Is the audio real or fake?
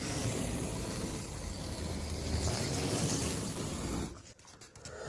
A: real